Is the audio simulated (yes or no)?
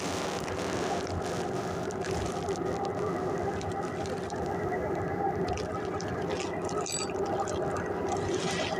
no